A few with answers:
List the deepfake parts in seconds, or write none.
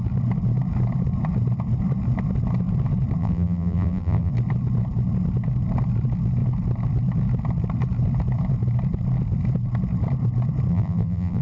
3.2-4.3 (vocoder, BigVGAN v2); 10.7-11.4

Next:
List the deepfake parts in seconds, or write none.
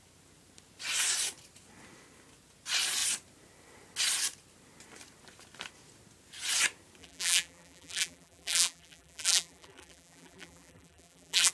7.0-11.5 (vocoder, BigVGAN v2)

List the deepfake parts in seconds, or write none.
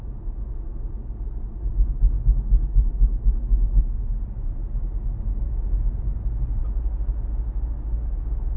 none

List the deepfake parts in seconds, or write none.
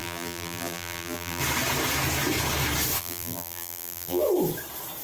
0.0-1.4 (vocoder, BigVGAN v2); 3.0-4.2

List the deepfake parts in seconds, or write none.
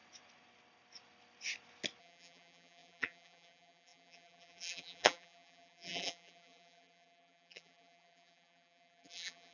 2.0-9.5 (vocoder, BigVGAN v2)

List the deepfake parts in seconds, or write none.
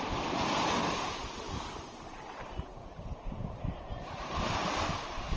1.2-4.4 (vocoder, BigVGAN v2)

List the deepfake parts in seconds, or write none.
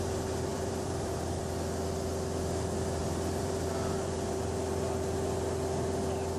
0.5-1.4 (vocoder, BigVGAN v2); 3.0-3.6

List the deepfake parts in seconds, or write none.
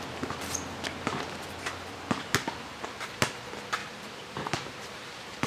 3.8-5.5 (vocoder, BigVGAN v2)